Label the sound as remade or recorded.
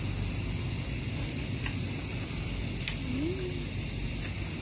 recorded